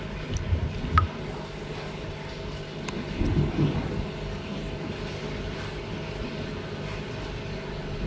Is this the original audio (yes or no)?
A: yes